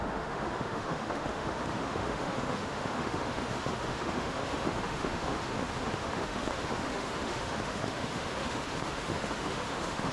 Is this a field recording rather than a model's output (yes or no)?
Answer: no